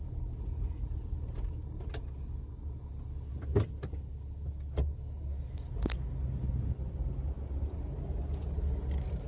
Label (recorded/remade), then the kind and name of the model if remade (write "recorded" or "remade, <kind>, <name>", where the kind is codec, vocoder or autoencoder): recorded